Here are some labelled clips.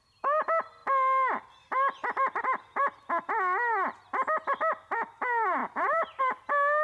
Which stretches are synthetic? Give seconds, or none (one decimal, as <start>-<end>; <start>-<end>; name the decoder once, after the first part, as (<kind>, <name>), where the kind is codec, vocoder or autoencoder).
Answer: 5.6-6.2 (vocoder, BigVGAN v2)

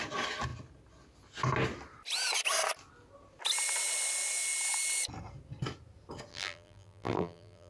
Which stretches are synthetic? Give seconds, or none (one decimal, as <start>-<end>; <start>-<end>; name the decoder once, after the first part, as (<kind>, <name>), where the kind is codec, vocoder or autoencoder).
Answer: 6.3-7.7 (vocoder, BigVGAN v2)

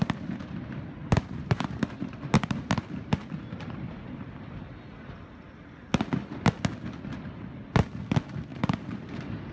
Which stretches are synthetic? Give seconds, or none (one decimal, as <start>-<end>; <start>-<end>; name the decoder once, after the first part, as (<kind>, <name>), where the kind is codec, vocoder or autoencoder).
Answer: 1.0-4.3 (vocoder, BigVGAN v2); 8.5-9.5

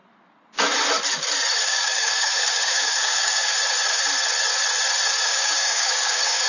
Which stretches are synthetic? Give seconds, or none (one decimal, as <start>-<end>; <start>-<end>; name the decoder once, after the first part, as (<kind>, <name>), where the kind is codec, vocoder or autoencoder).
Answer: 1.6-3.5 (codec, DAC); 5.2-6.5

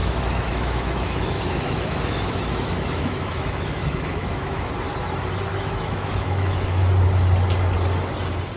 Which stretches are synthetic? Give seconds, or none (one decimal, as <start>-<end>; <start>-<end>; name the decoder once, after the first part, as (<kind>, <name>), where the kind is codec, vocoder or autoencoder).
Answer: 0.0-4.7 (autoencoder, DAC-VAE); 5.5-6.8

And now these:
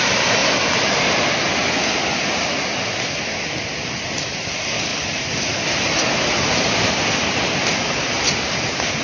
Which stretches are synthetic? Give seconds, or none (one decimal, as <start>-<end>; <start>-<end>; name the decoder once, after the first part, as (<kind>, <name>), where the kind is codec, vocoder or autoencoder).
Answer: none

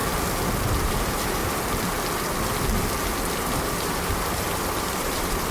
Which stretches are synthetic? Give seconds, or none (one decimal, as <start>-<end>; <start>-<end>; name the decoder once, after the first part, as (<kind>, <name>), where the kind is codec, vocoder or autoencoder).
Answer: 0.8-1.4 (vocoder, BigVGAN v2); 3.8-5.5

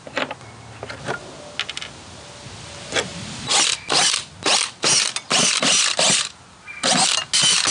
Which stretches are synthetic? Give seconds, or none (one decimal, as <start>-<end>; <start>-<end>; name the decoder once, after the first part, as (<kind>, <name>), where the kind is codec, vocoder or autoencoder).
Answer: none